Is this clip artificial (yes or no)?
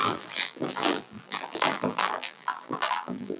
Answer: yes